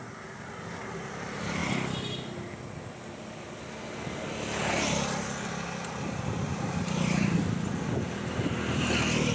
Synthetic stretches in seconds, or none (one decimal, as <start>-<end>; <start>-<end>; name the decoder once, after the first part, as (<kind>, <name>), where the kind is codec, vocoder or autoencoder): none